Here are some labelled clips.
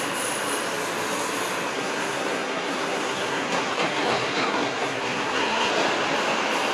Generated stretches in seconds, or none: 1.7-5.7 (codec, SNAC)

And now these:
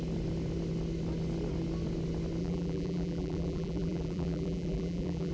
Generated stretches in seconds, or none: 2.4-5.3 (vocoder, BigVGAN v2)

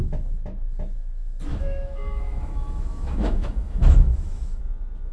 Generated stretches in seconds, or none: 1.5-4.6 (autoencoder, DAC-VAE)

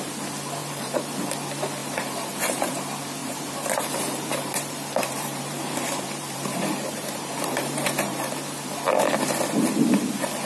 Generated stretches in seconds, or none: 0.6-1.2 (vocoder, BigVGAN v2); 1.8-2.7; 3.2-8.3

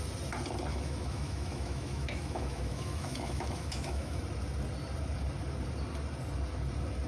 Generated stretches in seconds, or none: 0.7-4.2 (autoencoder, DAC-VAE)

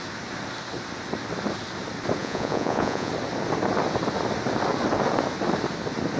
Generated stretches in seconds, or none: 2.2-3.1 (vocoder, Vocos)

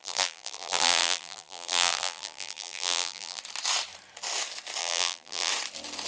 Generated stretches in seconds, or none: 0.0-3.4 (vocoder, BigVGAN v2); 4.8-5.5